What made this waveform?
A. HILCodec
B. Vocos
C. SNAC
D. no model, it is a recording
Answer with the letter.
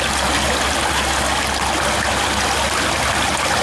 D